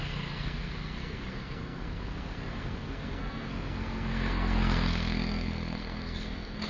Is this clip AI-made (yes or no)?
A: yes